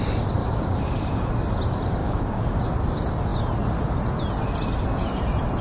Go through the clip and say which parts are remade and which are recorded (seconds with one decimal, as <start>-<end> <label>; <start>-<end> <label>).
0.0-0.4 recorded; 0.4-1.3 remade; 1.3-2.0 recorded; 2.0-2.6 remade; 2.6-5.6 recorded